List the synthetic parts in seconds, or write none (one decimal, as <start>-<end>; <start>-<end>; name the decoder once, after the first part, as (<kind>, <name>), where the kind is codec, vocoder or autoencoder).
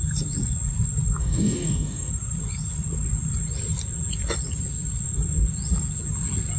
1.2-2.1 (codec, DAC)